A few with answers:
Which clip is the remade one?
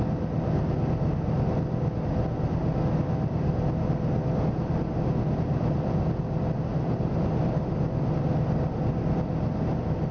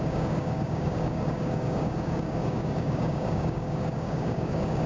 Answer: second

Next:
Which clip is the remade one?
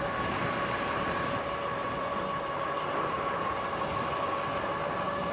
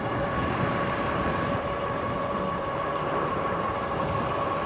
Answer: second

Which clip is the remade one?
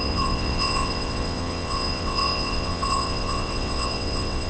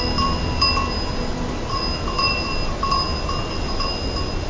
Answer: first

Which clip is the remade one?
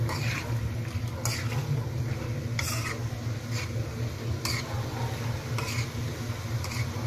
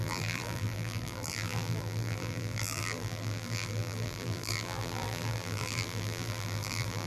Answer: second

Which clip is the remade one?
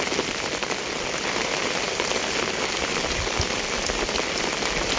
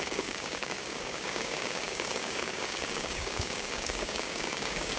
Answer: second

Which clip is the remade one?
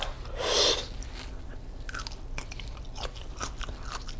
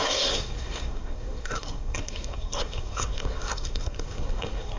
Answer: second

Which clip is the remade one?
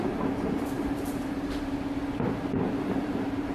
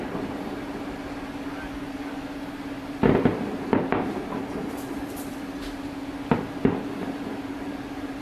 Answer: first